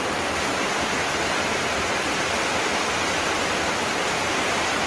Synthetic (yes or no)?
no